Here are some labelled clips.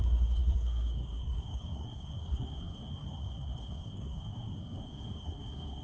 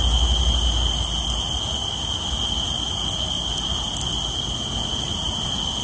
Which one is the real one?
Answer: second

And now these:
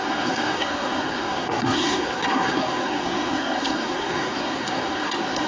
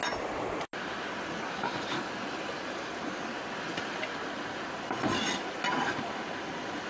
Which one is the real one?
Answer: second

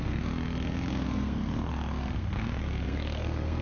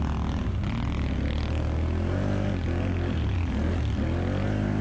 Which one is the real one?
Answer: second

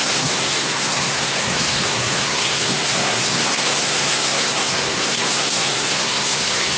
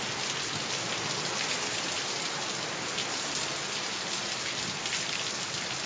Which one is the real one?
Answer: second